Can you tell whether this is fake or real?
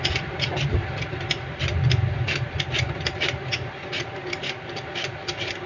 fake